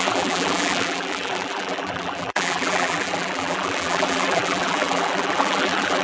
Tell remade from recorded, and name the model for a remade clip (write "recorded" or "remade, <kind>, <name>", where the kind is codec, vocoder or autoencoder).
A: remade, vocoder, BigVGAN v2